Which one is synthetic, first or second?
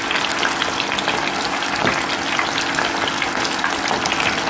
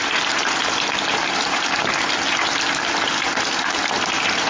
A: second